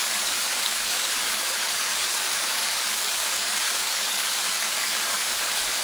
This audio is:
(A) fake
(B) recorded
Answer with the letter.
A